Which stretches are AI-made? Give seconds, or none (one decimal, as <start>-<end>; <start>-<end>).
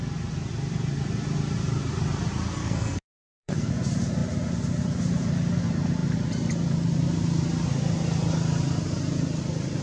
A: 2.6-3.7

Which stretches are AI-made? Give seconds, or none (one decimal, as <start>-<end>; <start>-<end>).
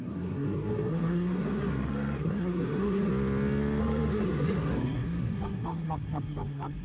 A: 0.0-3.1; 3.8-6.8